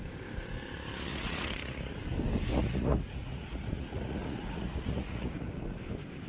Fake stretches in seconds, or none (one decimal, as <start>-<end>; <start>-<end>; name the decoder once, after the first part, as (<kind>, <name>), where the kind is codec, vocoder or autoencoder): 1.1-2.0 (vocoder, Vocos); 2.5-5.5